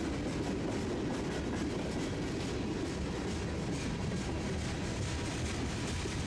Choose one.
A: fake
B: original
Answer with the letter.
B